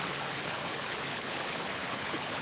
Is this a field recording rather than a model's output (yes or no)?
no